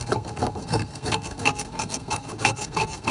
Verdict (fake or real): fake